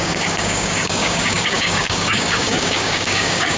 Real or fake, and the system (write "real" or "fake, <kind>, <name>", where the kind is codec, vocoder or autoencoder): fake, codec, DAC